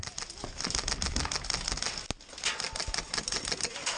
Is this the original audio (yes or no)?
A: yes